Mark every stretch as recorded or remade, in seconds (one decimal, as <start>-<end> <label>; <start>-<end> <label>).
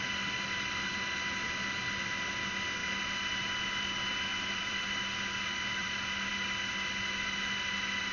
0.0-4.3 recorded; 4.3-5.0 remade; 5.0-5.8 recorded; 5.8-6.3 remade; 6.3-8.1 recorded